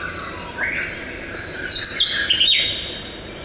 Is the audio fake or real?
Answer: real